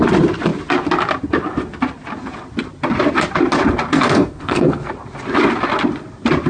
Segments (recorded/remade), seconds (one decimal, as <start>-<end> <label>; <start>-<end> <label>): 0.0-3.9 recorded; 3.9-4.9 remade; 4.9-6.5 recorded